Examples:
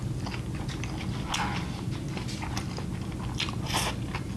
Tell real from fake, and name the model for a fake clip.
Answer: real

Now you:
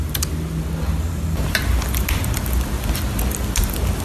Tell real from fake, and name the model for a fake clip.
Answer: real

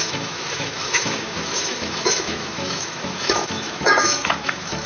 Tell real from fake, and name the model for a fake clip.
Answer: fake, autoencoder, DAC-VAE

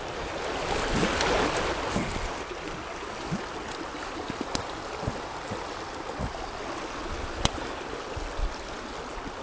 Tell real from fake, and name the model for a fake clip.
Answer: real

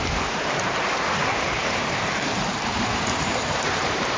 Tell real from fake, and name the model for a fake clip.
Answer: fake, vocoder, BigVGAN v2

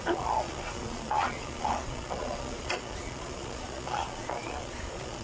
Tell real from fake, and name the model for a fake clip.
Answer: fake, vocoder, Vocos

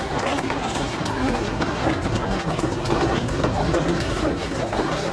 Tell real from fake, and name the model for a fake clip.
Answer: fake, codec, SNAC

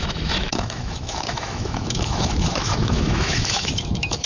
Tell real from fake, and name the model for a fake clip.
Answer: fake, autoencoder, DAC-VAE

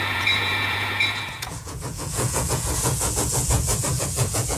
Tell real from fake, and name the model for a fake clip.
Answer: fake, vocoder, Vocos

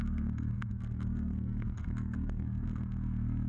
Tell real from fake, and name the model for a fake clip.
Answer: fake, codec, SNAC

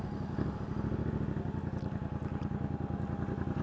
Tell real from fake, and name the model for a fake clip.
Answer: real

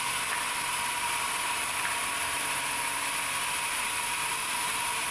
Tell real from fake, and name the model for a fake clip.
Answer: real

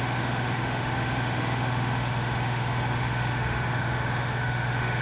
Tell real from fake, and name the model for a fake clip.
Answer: fake, autoencoder, DAC-VAE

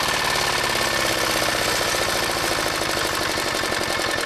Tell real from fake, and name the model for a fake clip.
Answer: real